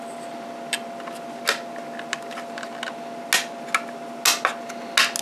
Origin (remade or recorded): recorded